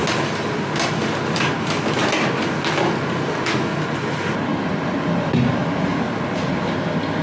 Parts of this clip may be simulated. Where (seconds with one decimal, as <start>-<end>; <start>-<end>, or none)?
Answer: 4.5-6.5